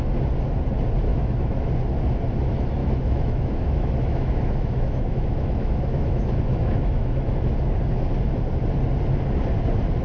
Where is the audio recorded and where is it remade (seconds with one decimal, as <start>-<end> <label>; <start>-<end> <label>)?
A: 0.0-1.1 recorded; 1.1-1.7 remade; 1.7-2.8 recorded; 2.8-7.3 remade; 7.3-10.0 recorded